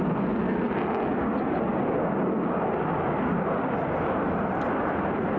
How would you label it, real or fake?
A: real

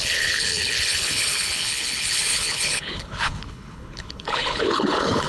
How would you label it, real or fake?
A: fake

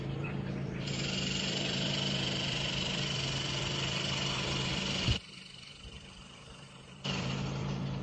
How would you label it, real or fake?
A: fake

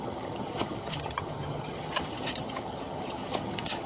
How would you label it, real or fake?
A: fake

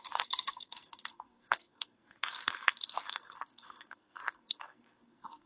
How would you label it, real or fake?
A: fake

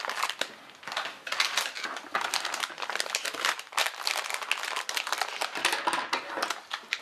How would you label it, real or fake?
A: real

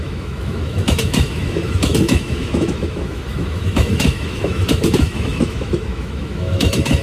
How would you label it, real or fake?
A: fake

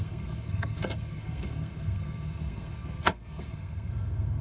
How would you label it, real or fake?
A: fake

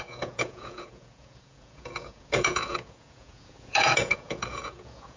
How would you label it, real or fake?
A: fake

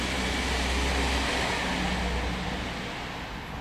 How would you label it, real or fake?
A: real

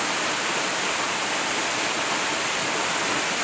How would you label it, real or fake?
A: real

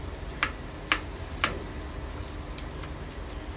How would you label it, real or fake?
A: real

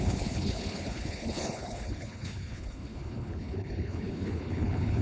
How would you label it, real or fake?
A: fake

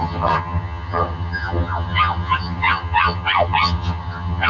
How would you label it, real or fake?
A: fake